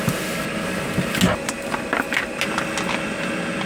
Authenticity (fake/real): real